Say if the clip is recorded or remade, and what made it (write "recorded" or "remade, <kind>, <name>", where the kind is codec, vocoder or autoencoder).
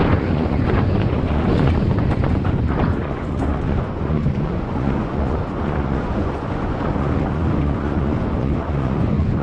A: remade, vocoder, Vocos